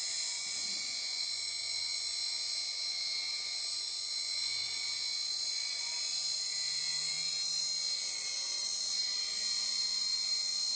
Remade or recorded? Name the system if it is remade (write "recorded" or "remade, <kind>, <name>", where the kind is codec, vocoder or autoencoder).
remade, vocoder, Vocos